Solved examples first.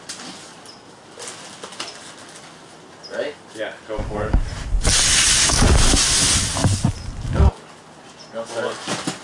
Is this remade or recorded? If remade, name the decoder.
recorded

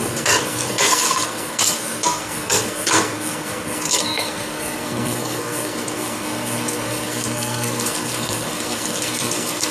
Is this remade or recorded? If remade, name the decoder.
remade, codec, SNAC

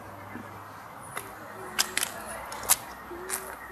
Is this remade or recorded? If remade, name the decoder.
recorded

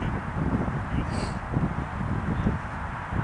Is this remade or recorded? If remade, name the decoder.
recorded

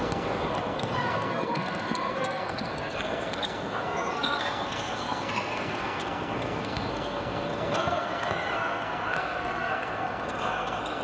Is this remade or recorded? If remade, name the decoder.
remade, codec, SNAC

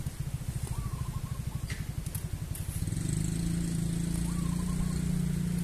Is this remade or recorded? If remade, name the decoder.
recorded